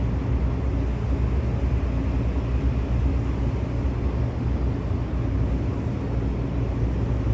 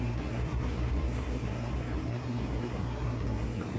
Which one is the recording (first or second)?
first